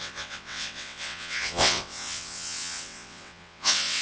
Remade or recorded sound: remade